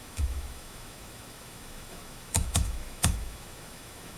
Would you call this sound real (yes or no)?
no